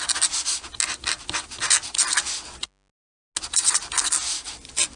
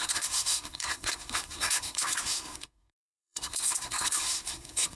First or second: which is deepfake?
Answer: second